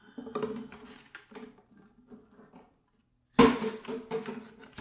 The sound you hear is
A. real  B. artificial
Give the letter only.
A